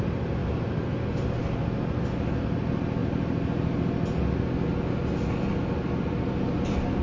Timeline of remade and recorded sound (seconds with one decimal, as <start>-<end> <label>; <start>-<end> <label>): 0.0-7.0 recorded